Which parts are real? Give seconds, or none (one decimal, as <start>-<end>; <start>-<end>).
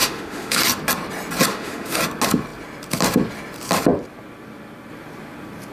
0.6-1.5; 2.0-5.7